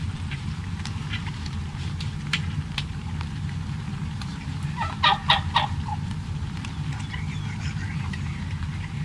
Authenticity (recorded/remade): remade